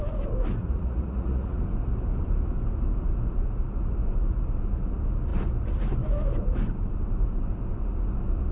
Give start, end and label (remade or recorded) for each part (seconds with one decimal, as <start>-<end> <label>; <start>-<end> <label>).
0.0-0.6 recorded; 0.6-1.6 remade; 1.6-8.5 recorded